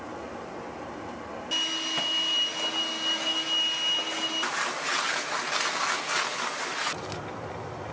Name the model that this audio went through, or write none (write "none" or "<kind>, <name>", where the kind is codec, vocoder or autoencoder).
none